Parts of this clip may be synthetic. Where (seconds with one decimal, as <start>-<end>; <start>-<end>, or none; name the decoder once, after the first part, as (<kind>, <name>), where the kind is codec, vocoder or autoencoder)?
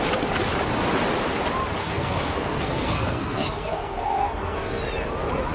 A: 1.8-4.8 (codec, SNAC)